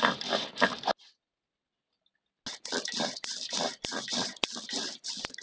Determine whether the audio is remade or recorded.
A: recorded